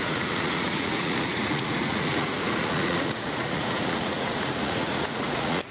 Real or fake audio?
fake